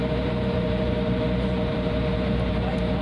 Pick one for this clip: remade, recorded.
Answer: remade